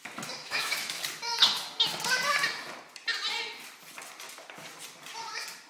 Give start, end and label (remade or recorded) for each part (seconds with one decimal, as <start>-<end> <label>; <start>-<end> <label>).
0.0-0.4 recorded; 0.4-1.0 remade; 1.0-5.7 recorded